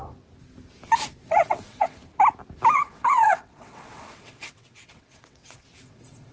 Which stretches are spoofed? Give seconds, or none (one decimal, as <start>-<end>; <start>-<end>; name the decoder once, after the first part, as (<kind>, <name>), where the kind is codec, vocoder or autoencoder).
1.3-2.0 (vocoder, WaveNeXt); 2.7-6.3